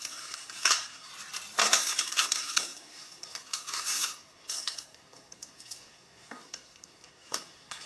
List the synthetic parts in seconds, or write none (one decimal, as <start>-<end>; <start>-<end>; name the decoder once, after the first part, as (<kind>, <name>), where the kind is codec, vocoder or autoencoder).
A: 0.0-1.1 (codec, SNAC); 1.6-7.9